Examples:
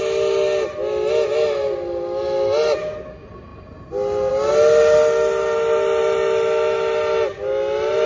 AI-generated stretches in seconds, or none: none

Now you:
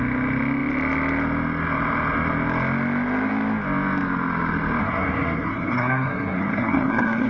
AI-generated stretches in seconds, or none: 4.8-7.3 (codec, SNAC)

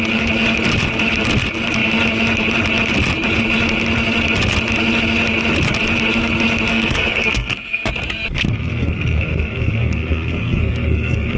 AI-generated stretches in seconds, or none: 6.7-7.9 (codec, SNAC); 8.7-11.4

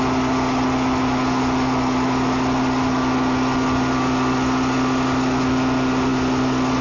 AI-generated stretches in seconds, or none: none

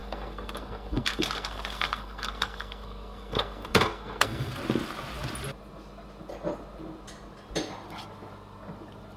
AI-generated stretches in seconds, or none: 0.0-4.6 (codec, SNAC)